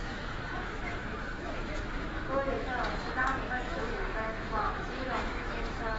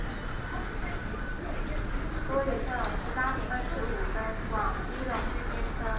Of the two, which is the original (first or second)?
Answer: second